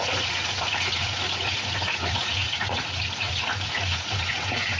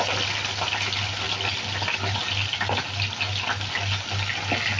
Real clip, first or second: second